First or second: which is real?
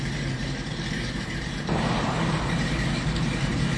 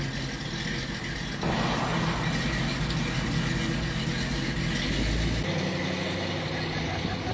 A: second